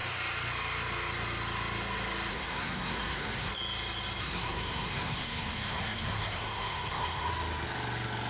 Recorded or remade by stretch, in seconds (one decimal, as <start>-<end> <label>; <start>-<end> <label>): 0.0-2.3 recorded; 2.3-3.5 remade; 3.5-4.2 recorded; 4.2-7.3 remade; 7.3-8.3 recorded